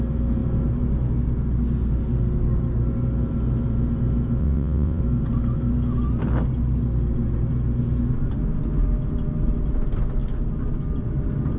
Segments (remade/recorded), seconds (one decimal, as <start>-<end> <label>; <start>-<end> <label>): 0.0-4.4 recorded; 4.4-5.0 remade; 5.0-11.6 recorded